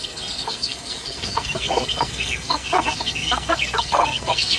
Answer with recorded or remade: remade